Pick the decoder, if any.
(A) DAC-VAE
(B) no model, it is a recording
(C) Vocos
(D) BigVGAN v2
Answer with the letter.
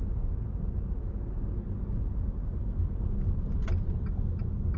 B